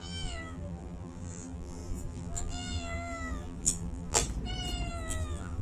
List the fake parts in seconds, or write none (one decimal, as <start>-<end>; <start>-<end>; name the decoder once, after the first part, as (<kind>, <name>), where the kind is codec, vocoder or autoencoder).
0.0-4.2 (vocoder, BigVGAN v2); 4.9-5.6